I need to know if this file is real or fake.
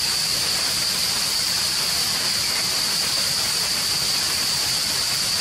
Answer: real